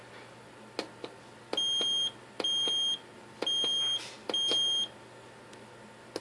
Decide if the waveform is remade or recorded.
recorded